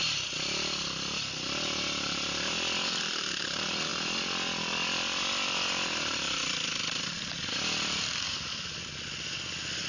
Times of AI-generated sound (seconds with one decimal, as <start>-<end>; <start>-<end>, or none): 3.9-8.8